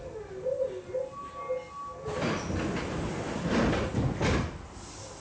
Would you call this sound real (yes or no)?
yes